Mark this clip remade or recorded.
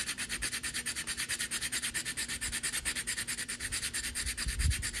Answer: remade